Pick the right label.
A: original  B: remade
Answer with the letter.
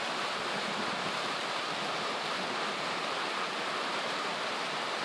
B